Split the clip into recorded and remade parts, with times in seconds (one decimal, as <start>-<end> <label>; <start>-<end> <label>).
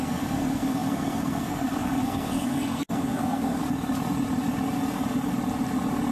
0.0-3.6 remade; 3.6-6.1 recorded